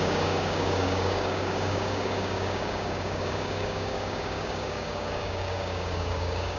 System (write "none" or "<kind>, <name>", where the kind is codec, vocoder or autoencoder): codec, DAC